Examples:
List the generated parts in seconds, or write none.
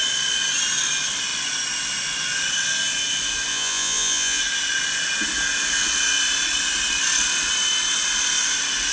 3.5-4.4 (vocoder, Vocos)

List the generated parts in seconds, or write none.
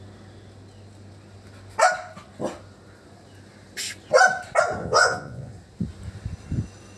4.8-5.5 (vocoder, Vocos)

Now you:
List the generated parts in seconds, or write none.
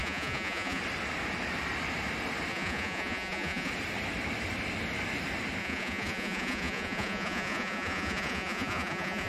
0.0-0.8 (vocoder, Vocos); 2.5-3.7; 5.6-9.3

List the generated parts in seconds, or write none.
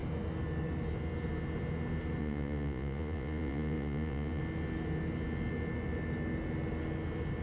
2.2-4.4 (vocoder, Vocos)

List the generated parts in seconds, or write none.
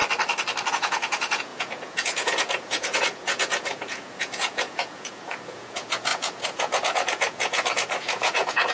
0.7-8.7 (vocoder, Vocos)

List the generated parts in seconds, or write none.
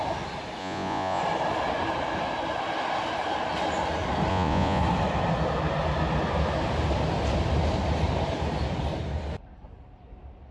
0.6-1.2 (vocoder, Vocos); 4.3-4.8